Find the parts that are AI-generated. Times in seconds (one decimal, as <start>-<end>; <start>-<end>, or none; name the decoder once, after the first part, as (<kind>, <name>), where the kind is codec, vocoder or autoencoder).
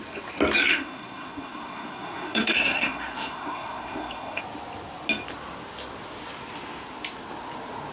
0.7-4.4 (codec, SNAC)